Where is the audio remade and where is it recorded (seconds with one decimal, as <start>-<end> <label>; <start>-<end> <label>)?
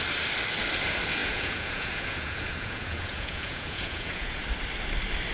0.0-1.2 recorded; 1.2-4.4 remade; 4.4-5.3 recorded